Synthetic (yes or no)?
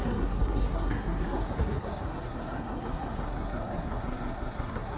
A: yes